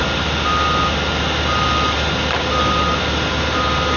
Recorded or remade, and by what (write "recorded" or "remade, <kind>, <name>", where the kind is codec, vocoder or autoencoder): recorded